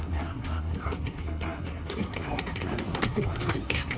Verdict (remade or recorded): remade